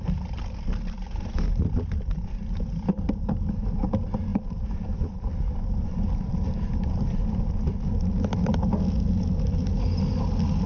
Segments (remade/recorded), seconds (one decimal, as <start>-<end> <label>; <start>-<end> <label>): 0.0-10.7 recorded